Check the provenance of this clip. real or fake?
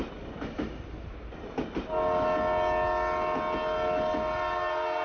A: real